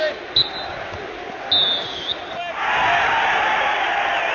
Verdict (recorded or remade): recorded